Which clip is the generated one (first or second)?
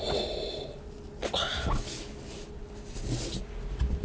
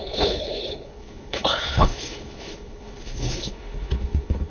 second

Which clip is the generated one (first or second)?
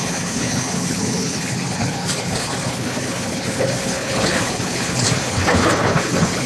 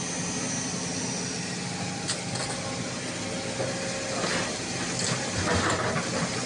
first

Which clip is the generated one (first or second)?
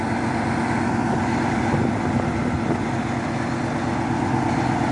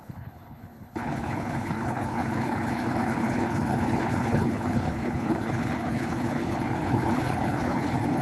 second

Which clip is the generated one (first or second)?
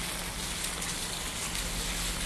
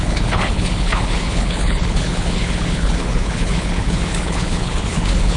second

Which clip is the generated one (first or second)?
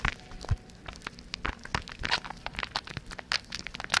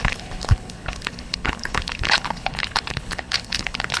second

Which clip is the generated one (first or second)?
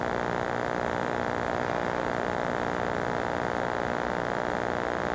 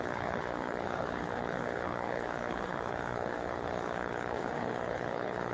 second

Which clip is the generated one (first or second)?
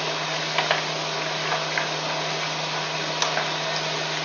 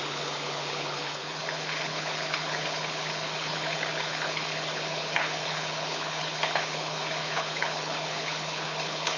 second